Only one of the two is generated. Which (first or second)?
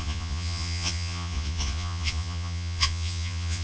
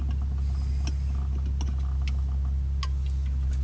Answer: first